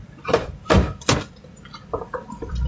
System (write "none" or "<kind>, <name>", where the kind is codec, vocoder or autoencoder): vocoder, BigVGAN v2